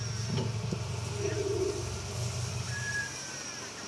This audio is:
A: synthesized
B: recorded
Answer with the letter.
B